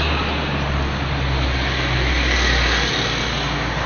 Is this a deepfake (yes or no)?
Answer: no